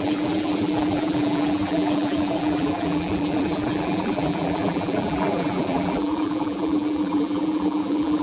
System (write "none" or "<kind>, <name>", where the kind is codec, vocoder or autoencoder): vocoder, BigVGAN v2